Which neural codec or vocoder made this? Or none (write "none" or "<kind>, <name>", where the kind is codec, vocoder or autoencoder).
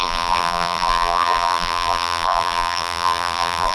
vocoder, BigVGAN v2